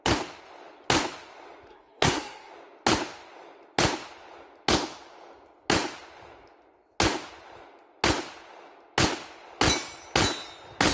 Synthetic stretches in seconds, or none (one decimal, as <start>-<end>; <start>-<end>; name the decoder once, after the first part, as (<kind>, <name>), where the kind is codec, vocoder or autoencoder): 1.7-2.5 (codec, SNAC)